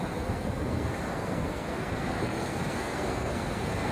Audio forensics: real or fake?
fake